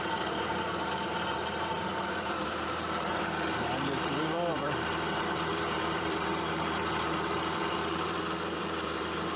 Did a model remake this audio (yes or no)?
yes